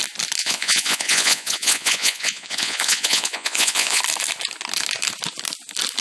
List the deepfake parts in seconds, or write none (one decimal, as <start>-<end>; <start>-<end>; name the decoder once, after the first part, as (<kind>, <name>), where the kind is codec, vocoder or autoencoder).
0.4-4.0 (vocoder, Vocos)